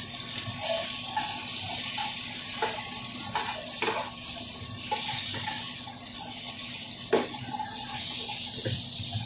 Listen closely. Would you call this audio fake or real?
real